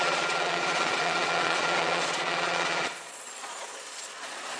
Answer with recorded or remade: remade